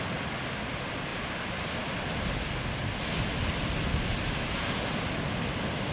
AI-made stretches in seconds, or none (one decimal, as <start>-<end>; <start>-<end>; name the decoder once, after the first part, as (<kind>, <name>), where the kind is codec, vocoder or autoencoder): none